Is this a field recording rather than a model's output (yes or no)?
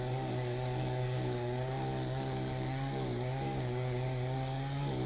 no